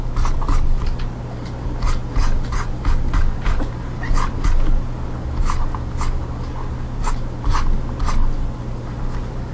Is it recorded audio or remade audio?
recorded